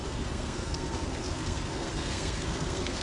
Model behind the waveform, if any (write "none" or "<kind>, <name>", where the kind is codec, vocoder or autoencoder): codec, SNAC